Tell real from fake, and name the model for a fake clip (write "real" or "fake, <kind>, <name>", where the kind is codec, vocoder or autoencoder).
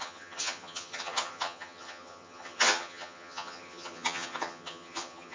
fake, vocoder, HiFi-GAN